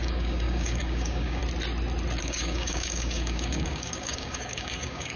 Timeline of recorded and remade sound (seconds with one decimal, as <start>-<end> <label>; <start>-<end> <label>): 0.0-1.4 remade; 1.4-2.2 recorded; 2.2-5.2 remade